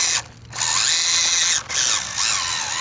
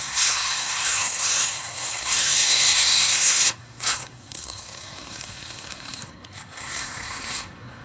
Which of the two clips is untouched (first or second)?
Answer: first